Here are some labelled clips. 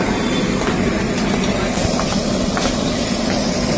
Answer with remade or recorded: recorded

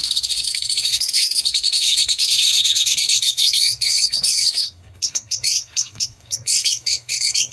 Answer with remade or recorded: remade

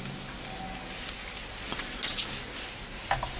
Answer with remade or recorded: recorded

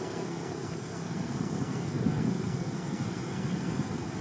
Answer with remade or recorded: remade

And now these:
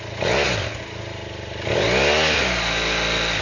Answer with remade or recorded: recorded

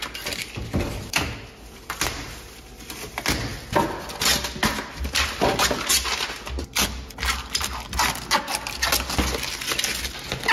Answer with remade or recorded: recorded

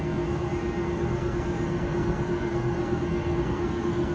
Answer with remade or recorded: remade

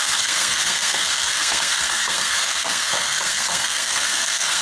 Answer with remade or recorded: remade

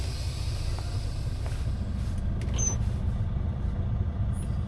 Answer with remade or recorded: recorded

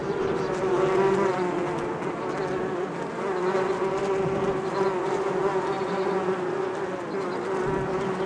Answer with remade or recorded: recorded